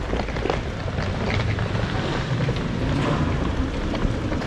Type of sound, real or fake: fake